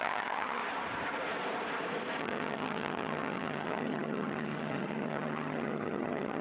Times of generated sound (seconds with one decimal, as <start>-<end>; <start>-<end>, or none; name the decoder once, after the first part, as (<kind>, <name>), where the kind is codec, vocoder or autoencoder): 0.0-0.6 (vocoder, HiFi-GAN); 2.2-6.4